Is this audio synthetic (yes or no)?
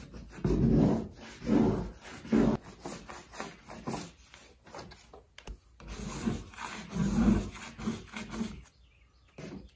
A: no